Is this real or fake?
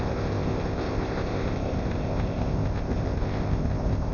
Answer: fake